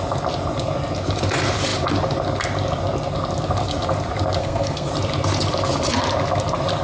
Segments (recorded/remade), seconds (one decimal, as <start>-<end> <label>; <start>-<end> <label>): 0.0-4.4 recorded; 4.4-4.9 remade; 4.9-6.8 recorded